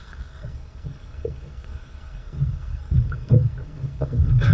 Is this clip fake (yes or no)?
yes